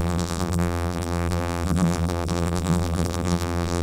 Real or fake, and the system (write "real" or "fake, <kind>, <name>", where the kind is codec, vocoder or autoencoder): fake, vocoder, BigVGAN v2